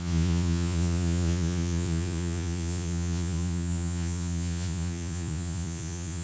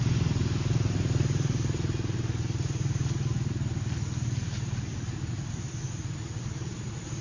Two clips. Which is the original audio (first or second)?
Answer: second